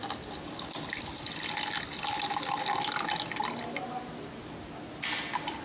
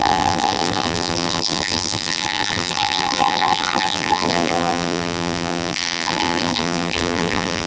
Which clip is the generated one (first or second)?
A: second